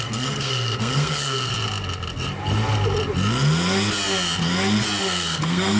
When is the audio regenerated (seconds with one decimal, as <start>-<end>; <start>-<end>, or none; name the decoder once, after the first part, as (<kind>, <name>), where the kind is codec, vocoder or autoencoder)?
0.0-1.5 (codec, SNAC); 5.0-5.8